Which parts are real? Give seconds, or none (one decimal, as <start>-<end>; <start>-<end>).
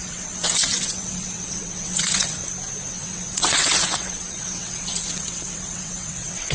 2.4-2.9